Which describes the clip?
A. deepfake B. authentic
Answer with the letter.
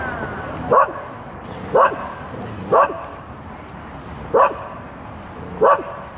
B